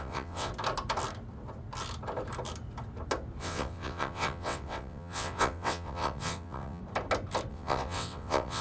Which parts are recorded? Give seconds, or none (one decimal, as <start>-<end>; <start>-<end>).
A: 0.5-3.4; 6.8-7.5